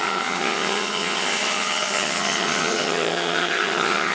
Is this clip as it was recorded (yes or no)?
no